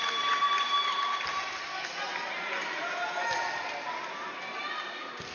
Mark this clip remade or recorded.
recorded